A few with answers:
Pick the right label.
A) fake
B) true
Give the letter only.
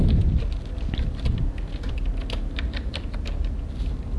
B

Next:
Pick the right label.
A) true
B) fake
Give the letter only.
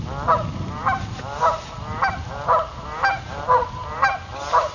A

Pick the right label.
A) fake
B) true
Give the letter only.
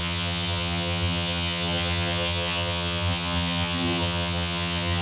A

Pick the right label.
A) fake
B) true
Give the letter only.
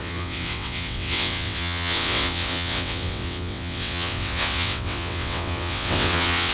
A